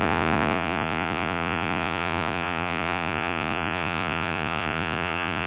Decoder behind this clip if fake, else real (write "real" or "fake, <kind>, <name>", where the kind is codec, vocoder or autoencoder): fake, vocoder, Vocos